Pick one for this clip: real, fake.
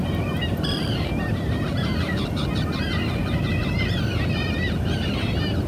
fake